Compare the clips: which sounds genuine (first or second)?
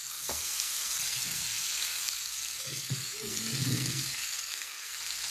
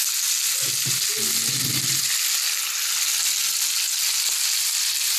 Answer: second